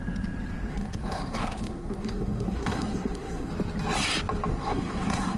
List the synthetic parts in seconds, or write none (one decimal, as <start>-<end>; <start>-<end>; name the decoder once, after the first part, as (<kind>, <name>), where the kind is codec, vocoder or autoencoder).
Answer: 0.7-3.5 (codec, SNAC); 4.5-5.4